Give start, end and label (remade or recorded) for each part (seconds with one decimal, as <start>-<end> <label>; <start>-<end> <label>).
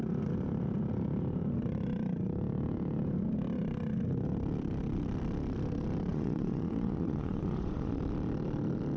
0.0-6.1 recorded; 6.1-8.0 remade; 8.0-9.0 recorded